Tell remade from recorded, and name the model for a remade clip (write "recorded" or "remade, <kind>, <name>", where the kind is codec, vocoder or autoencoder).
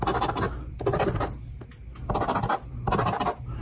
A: recorded